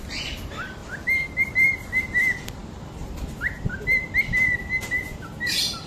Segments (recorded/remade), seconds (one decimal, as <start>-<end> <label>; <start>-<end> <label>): 0.0-5.9 recorded